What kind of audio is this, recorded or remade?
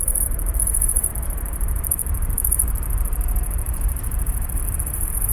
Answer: remade